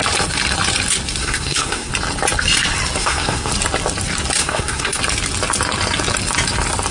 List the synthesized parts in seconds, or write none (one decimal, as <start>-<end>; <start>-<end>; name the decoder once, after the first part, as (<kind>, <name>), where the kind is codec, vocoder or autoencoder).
1.2-1.9 (codec, SNAC); 3.0-3.5; 4.4-5.0